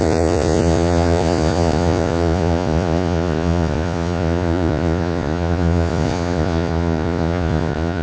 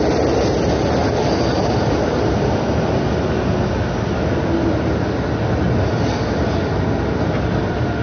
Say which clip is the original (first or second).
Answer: second